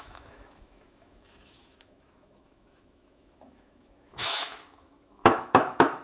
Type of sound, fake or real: fake